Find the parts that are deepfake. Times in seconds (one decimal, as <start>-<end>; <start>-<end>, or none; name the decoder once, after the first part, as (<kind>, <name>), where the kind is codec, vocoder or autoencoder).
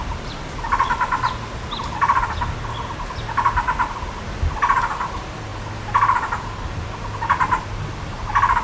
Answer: none